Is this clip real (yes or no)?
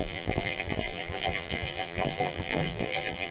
no